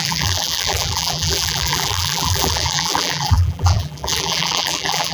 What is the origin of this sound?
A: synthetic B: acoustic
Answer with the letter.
A